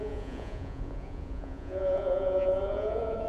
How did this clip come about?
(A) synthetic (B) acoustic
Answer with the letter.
A